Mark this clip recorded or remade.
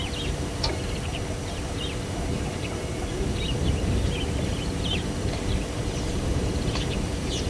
remade